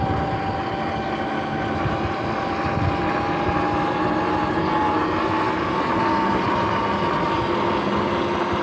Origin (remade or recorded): recorded